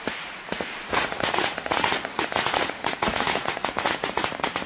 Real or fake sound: fake